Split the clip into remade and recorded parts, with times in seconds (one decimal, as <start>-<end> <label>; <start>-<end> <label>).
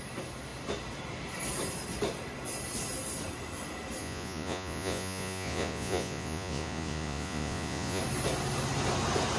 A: 0.0-4.0 recorded; 4.0-8.0 remade; 8.0-9.4 recorded